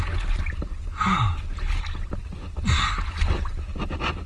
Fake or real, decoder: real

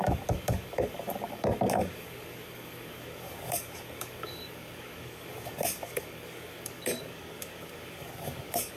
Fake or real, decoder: fake, codec, DAC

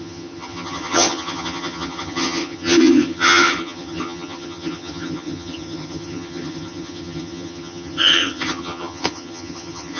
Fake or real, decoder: fake, vocoder, HiFi-GAN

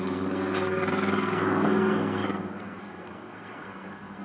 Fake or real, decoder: fake, codec, SNAC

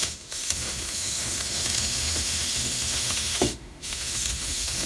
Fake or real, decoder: fake, autoencoder, DAC-VAE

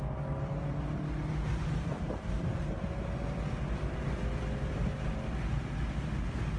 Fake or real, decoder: real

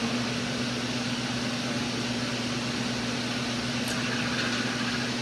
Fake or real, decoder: real